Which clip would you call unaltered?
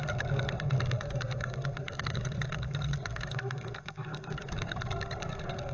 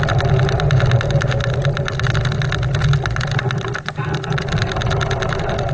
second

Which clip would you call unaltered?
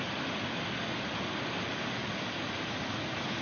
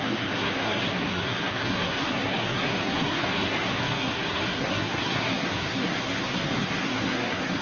first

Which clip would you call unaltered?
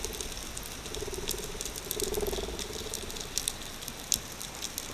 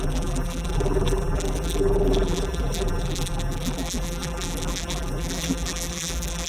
first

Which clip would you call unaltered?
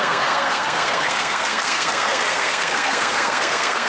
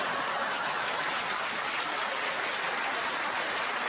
second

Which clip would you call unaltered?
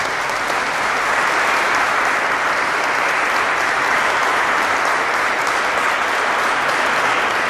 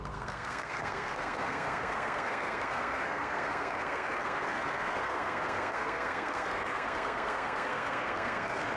first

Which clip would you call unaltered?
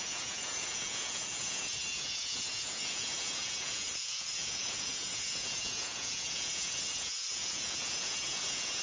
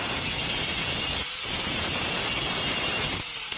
second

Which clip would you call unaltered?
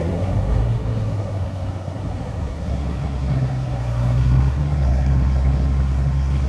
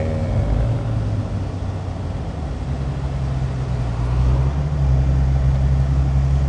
second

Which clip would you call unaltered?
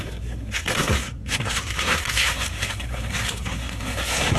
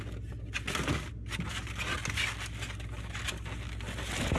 second